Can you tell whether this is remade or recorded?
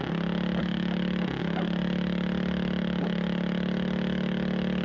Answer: recorded